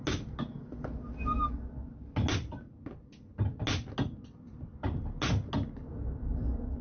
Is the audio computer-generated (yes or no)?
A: no